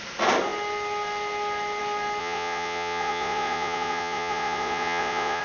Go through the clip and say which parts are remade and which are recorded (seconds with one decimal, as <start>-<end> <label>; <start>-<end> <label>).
0.0-2.2 recorded; 2.2-5.4 remade